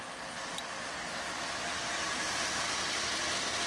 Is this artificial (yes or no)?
no